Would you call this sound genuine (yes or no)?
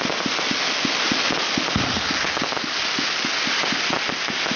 yes